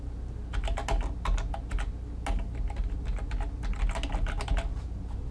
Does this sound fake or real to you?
real